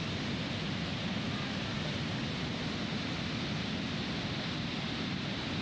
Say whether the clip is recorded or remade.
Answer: recorded